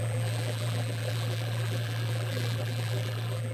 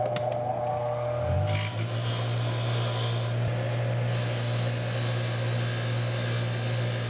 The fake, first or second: first